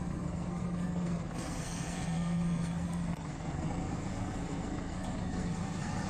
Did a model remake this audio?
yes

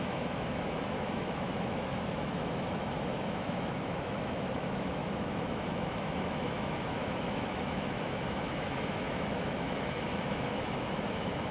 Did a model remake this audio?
yes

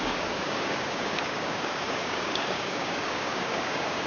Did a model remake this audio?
yes